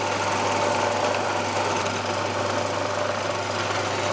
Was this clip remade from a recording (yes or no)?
no